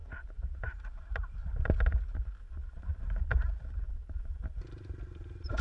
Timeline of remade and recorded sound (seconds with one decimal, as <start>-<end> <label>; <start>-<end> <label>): 0.0-2.9 recorded; 2.9-3.3 remade; 3.3-3.8 recorded; 3.8-5.6 remade

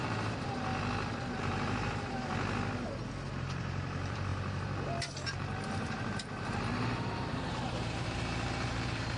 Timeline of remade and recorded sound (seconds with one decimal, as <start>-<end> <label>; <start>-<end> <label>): 0.0-0.7 remade; 0.7-1.4 recorded; 1.4-2.3 remade; 2.3-3.3 recorded; 3.3-9.2 remade

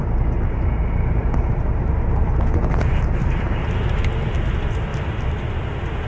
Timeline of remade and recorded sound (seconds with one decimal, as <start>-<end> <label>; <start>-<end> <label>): 0.0-1.2 recorded; 1.2-2.4 remade; 2.4-3.2 recorded; 3.2-4.0 remade; 4.0-6.1 recorded

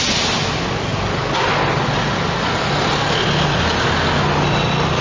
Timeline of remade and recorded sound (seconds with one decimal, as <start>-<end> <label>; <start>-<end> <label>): 0.0-5.0 recorded

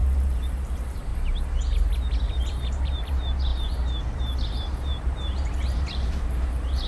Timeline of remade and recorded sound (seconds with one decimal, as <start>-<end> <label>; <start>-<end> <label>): 0.0-1.1 remade; 1.1-2.3 recorded; 2.3-6.9 remade

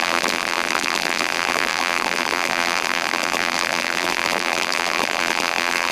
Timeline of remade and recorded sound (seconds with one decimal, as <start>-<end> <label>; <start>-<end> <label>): 0.0-5.9 remade

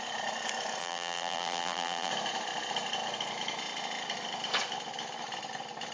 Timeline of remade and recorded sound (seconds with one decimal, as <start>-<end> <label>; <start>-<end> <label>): 0.0-0.8 recorded; 0.8-2.1 remade; 2.1-5.9 recorded